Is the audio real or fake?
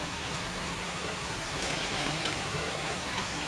fake